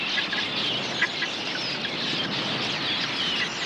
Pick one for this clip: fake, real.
real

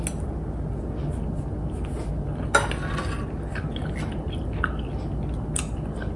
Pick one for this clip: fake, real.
real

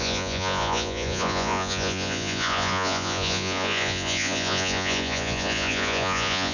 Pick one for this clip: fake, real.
fake